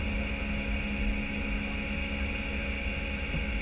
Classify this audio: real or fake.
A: real